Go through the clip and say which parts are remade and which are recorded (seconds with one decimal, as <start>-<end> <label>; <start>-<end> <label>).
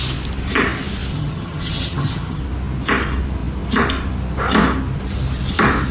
0.0-1.1 recorded; 1.1-2.4 remade; 2.4-5.9 recorded